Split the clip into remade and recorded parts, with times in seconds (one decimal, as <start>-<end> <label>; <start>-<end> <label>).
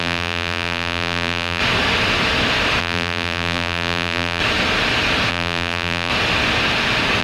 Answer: 0.0-1.6 remade; 1.6-2.8 recorded; 2.8-4.4 remade; 4.4-5.3 recorded; 5.3-6.1 remade; 6.1-7.2 recorded